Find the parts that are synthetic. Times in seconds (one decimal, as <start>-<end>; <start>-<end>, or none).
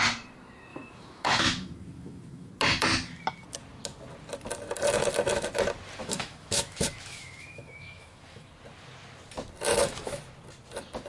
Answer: 0.7-2.5; 6.0-8.5; 9.7-10.2